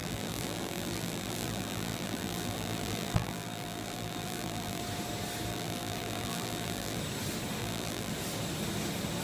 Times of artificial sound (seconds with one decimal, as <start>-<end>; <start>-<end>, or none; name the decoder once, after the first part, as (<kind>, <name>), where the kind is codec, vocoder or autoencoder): 0.0-4.8 (vocoder, BigVGAN v2); 5.5-7.0; 7.6-8.1